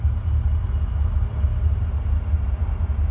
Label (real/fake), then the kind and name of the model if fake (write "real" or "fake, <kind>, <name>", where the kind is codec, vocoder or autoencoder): real